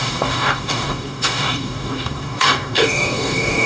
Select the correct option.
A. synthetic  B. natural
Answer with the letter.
A